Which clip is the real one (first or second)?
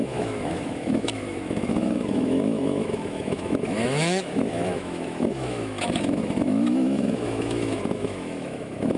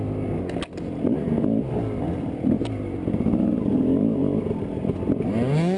second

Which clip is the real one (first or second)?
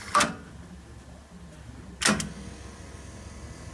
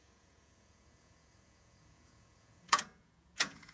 first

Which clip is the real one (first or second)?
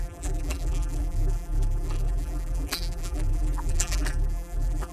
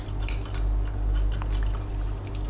second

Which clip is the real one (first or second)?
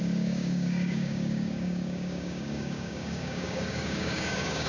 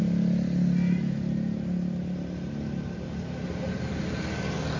second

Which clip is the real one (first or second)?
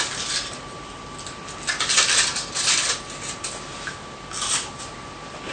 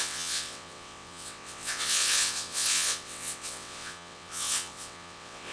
first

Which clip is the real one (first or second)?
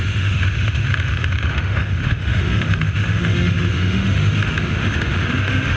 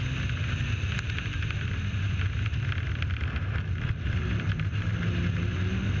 second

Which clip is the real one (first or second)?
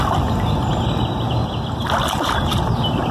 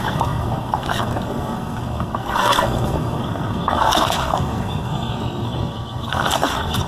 first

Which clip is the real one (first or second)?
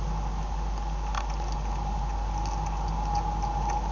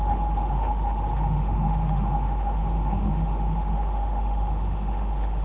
first